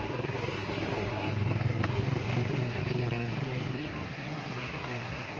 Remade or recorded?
remade